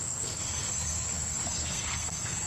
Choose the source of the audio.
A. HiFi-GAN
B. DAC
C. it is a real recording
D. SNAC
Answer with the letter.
D